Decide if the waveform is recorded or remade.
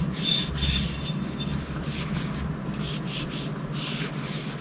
recorded